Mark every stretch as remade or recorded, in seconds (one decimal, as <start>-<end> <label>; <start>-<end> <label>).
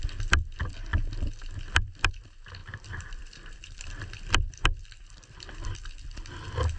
0.0-2.6 recorded; 2.6-6.2 remade; 6.2-6.8 recorded